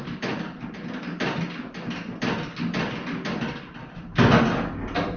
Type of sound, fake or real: real